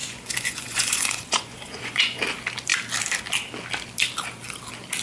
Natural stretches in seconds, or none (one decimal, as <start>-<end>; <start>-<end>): 2.2-5.0